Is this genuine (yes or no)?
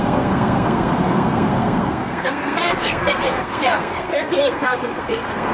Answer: no